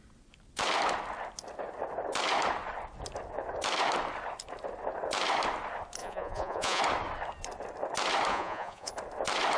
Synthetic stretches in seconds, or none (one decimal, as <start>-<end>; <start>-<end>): 6.0-6.8; 8.3-8.9